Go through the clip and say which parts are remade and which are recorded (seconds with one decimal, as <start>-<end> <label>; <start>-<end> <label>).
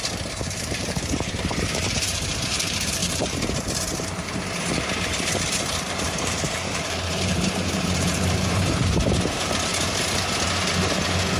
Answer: 0.0-9.7 remade; 9.7-11.4 recorded